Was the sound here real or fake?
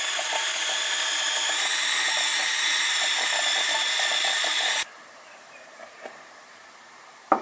fake